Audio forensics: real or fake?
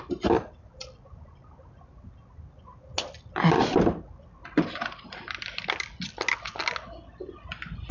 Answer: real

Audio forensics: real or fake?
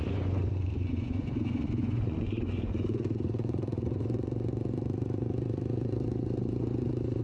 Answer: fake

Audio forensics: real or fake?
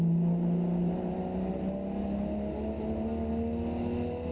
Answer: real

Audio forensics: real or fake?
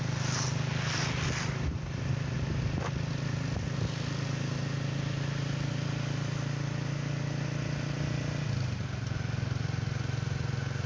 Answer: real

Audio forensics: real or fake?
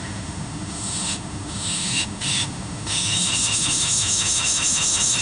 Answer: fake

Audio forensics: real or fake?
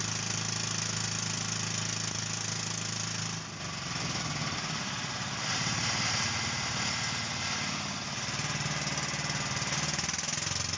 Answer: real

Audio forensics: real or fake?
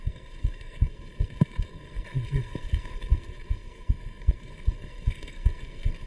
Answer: fake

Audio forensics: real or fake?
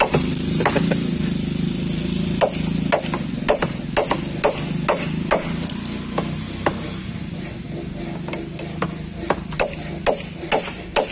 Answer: real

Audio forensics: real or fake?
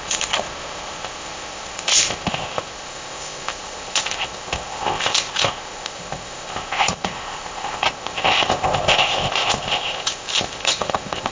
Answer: fake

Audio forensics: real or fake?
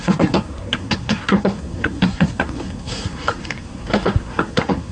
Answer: fake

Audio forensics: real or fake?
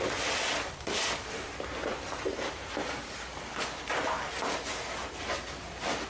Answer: real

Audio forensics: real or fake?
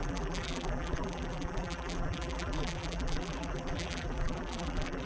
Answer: fake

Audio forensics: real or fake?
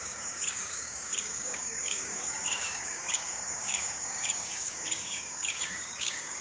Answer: fake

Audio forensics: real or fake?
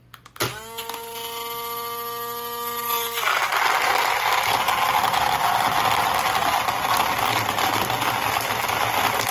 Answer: real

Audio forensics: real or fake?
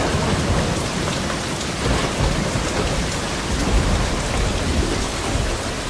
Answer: real